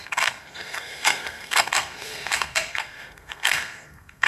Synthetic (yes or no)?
yes